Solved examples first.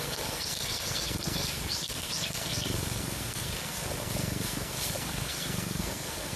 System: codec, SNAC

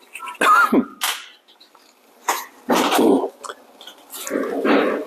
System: none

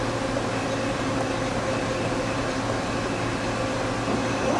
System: none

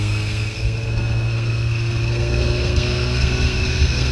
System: codec, SNAC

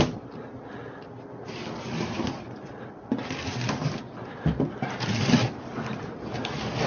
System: none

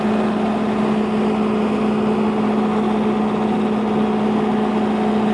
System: none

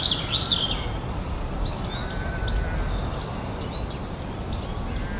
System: none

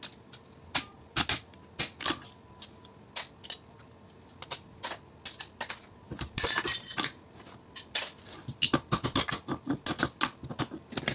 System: none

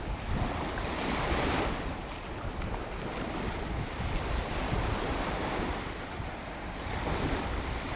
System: none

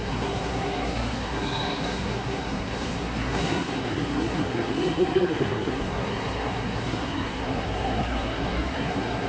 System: codec, SNAC